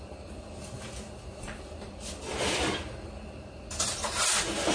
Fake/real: real